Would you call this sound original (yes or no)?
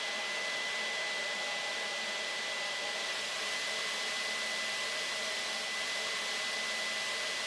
yes